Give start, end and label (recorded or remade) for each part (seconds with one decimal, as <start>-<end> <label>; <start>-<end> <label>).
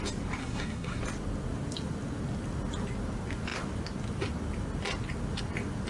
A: 0.0-0.4 recorded; 0.4-1.0 remade; 1.0-5.9 recorded